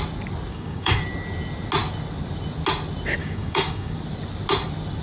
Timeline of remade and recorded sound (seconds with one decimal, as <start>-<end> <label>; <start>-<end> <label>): 0.0-0.5 recorded; 0.5-1.0 remade; 1.0-3.2 recorded; 3.2-4.0 remade; 4.0-5.0 recorded